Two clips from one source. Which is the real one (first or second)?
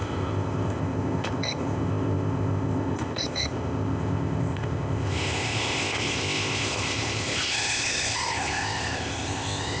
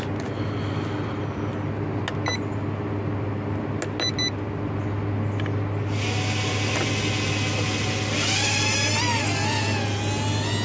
second